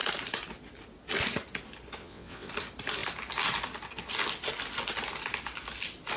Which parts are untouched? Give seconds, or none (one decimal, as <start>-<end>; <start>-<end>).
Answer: 0.0-2.0; 2.5-6.2